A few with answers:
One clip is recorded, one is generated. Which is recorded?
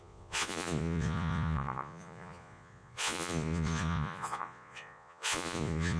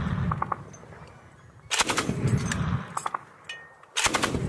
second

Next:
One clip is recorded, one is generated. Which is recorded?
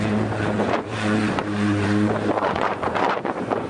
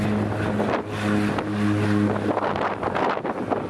second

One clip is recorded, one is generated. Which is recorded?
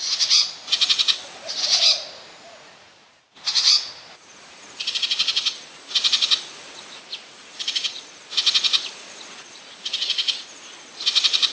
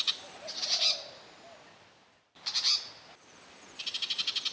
second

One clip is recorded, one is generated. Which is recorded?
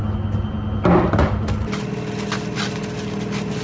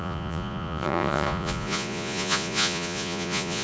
first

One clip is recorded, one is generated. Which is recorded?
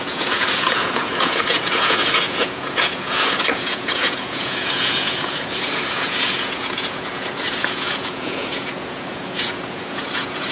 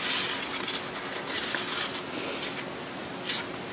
second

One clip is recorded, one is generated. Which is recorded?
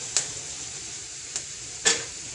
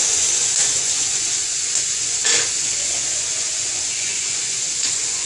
first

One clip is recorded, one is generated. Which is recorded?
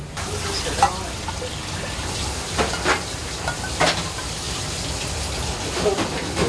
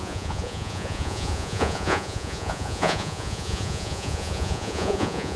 first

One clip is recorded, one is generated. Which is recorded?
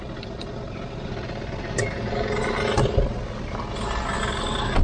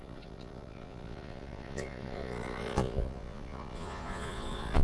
first